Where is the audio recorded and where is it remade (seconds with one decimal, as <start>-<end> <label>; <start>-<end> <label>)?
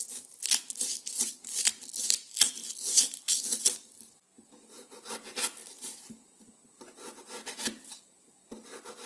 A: 0.0-9.1 recorded